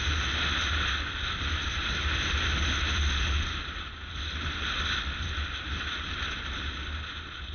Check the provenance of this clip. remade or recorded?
recorded